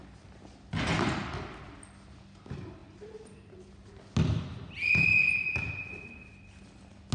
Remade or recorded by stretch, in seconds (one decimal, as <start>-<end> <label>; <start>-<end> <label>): 0.0-7.1 recorded